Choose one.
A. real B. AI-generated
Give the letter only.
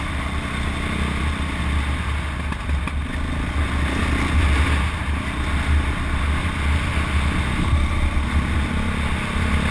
A